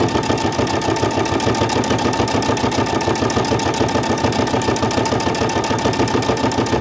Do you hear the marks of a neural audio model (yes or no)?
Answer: no